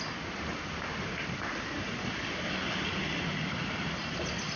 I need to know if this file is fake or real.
real